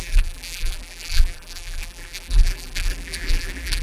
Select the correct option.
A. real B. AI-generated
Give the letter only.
B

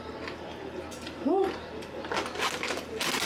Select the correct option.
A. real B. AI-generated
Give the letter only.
A